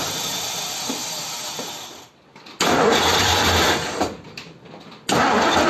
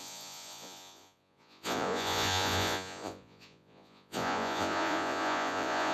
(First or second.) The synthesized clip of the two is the second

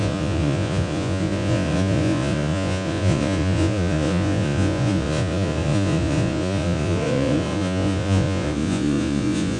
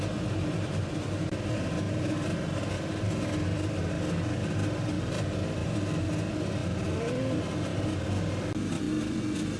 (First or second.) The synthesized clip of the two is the first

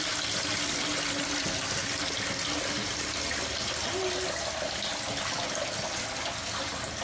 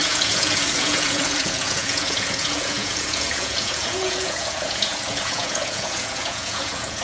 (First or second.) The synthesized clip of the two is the second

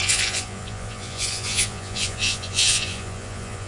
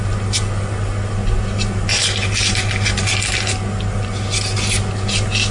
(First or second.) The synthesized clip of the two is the first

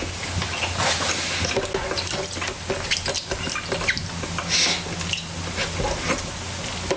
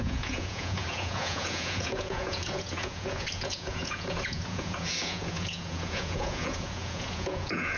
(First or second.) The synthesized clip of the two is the second